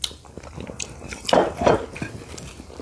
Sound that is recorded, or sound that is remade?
recorded